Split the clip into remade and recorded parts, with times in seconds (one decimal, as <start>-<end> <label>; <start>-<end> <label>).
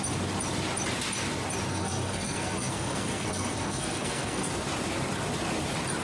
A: 0.0-1.7 recorded; 1.7-4.5 remade; 4.5-6.0 recorded